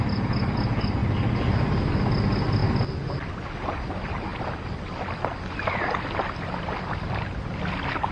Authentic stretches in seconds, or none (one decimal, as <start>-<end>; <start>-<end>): 0.0-8.1